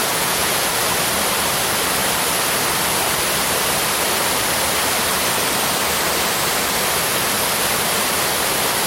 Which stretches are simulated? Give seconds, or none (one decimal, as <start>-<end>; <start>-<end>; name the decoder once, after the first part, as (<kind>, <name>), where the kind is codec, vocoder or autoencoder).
0.0-0.7 (vocoder, Vocos)